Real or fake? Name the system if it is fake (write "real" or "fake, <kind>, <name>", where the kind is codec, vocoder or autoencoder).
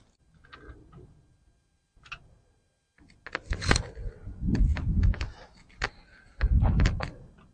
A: real